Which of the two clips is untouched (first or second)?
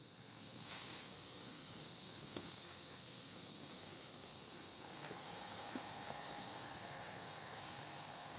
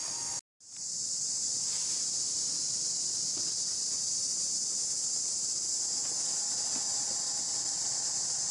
second